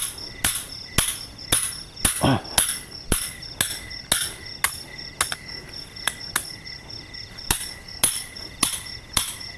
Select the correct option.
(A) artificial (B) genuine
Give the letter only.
B